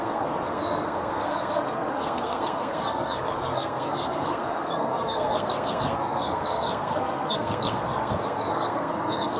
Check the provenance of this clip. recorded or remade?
remade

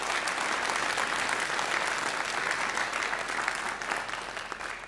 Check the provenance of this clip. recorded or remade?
recorded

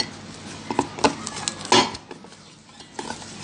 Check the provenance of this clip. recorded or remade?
recorded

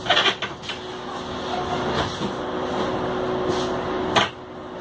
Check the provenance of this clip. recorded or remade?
recorded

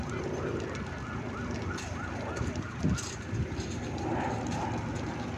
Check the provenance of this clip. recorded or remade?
recorded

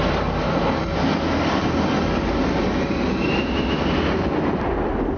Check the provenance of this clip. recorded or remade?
recorded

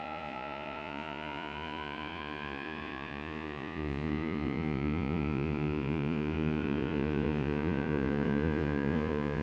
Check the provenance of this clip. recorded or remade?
remade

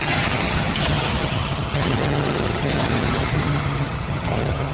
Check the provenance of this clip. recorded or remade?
remade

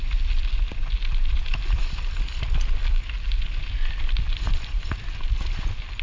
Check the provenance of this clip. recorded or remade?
recorded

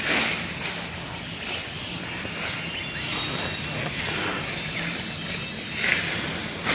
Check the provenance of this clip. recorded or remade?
recorded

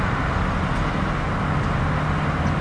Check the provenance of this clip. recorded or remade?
recorded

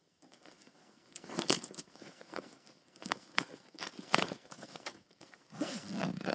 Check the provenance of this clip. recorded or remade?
remade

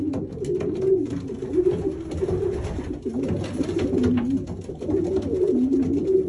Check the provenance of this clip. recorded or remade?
recorded